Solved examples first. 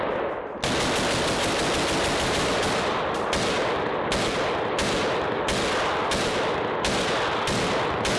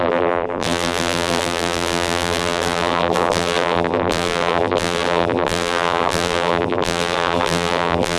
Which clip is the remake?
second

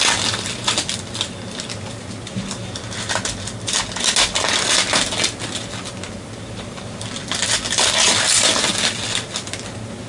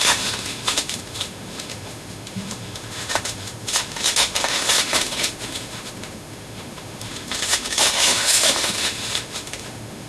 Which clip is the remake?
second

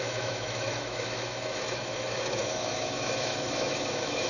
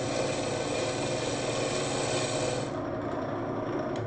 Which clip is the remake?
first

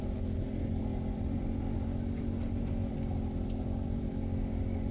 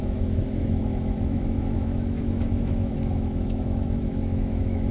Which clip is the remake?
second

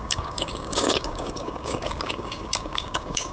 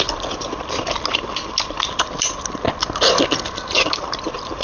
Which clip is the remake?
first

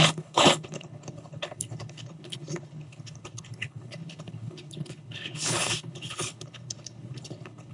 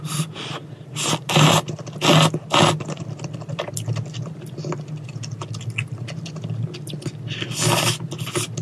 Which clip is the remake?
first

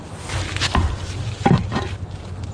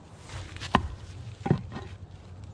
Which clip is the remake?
second